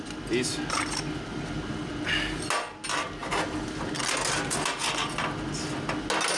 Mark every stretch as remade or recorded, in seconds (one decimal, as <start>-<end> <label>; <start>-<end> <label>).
0.0-1.3 recorded; 1.3-1.9 remade; 1.9-3.2 recorded; 3.2-4.0 remade; 4.0-6.4 recorded